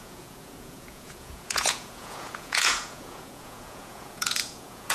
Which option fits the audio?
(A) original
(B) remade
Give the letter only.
B